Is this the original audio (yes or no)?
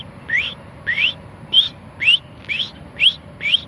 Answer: yes